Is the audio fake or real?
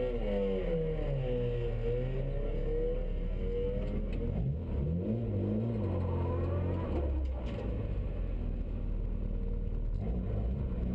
real